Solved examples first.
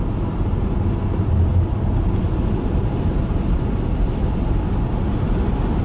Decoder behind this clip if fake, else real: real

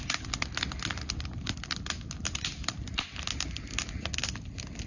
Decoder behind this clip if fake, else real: real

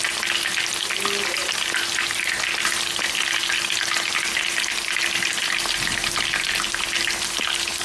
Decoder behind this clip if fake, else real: real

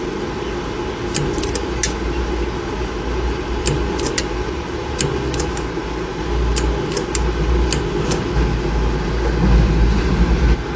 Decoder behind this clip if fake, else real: real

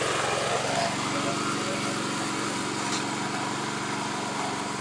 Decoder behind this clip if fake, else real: real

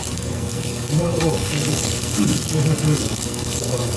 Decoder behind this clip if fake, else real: fake, codec, SNAC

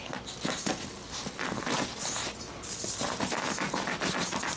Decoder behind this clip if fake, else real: real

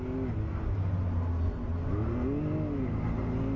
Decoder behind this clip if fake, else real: real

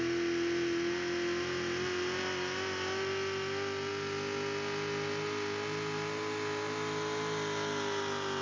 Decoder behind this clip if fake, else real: real